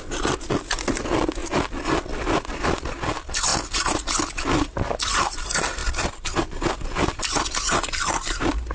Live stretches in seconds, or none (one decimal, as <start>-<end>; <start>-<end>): 0.0-8.7